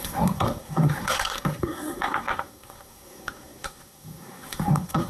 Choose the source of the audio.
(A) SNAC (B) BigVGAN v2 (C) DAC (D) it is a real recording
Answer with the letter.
A